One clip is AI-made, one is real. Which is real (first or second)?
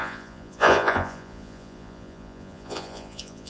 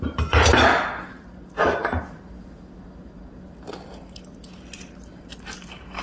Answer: second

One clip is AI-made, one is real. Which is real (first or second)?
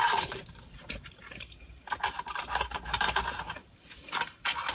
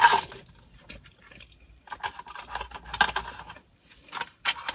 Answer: second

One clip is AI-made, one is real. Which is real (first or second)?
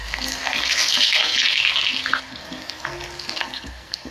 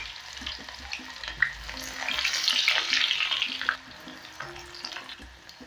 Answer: second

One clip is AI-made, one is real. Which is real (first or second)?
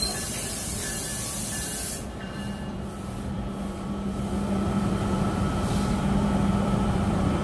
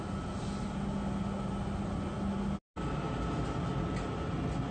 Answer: second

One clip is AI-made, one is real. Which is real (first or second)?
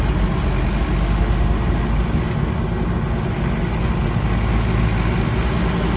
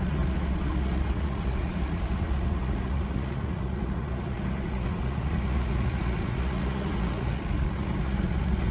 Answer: first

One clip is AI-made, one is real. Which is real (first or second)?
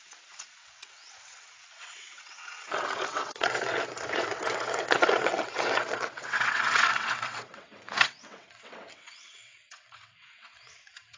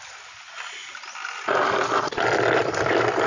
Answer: second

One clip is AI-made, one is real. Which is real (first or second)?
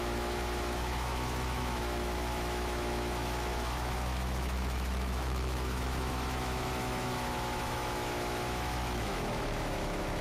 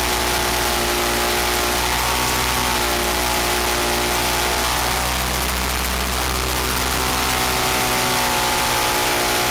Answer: second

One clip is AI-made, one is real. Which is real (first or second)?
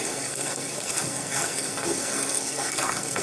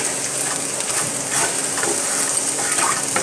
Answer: second